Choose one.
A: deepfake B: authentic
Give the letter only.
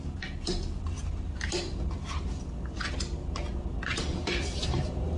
B